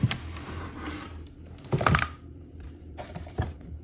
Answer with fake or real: fake